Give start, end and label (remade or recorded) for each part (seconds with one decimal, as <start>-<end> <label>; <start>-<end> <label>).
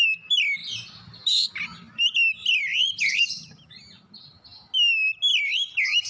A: 0.0-0.6 recorded; 0.6-1.5 remade; 1.5-2.7 recorded; 2.7-3.7 remade; 3.7-6.1 recorded